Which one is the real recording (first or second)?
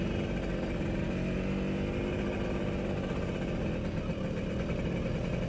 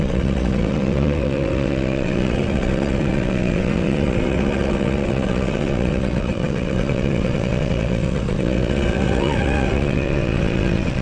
first